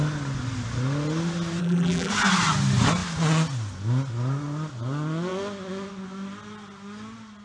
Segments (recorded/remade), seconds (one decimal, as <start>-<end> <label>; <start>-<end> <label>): 0.0-1.6 recorded; 1.6-2.1 remade; 2.1-7.4 recorded